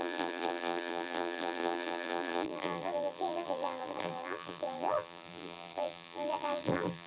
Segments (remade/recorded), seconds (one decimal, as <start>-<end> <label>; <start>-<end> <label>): 0.0-7.1 remade